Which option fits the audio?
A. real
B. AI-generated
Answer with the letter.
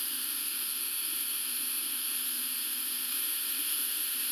B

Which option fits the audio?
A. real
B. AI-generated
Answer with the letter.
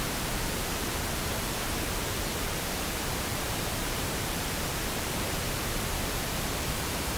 B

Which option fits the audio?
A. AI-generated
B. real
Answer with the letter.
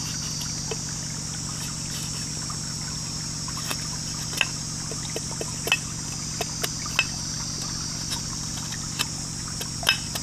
B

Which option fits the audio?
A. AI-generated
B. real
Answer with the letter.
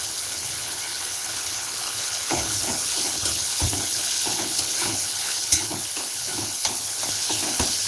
A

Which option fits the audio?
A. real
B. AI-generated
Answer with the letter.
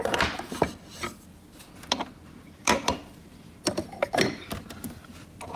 A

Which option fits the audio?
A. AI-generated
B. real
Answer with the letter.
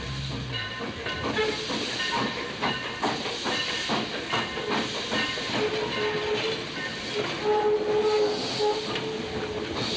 B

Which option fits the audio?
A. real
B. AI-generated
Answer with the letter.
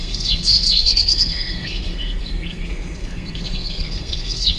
B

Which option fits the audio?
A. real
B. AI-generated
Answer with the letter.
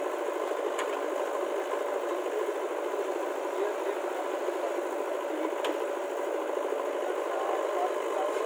A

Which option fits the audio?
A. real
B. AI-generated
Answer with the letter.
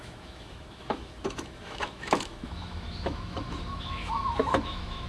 B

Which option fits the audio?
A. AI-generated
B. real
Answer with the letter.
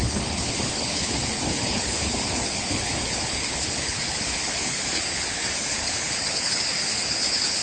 A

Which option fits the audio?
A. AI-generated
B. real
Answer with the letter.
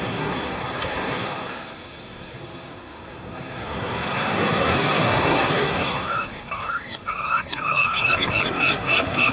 A